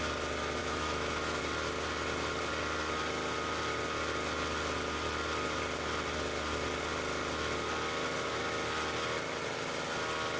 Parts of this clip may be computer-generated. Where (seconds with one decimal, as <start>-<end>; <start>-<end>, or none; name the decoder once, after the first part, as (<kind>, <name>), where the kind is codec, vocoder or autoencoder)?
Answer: 0.6-1.4 (autoencoder, DAC-VAE)